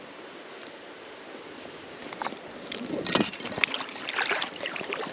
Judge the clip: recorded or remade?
recorded